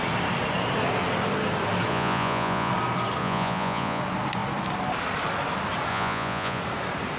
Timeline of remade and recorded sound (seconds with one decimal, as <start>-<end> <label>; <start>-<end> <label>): 0.0-1.9 recorded; 1.9-2.7 remade; 2.7-3.2 recorded; 3.2-4.0 remade; 4.0-5.9 recorded; 5.9-6.6 remade; 6.6-7.2 recorded